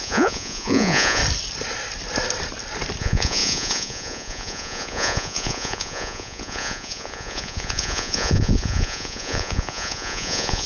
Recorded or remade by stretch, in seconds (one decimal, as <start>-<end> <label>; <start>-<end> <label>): 0.0-1.2 remade; 1.2-3.0 recorded; 3.0-10.7 remade